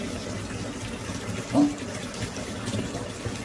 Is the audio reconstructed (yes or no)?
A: no